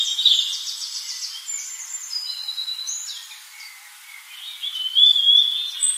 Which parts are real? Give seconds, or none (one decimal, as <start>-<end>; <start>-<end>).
0.0-0.8; 3.7-6.0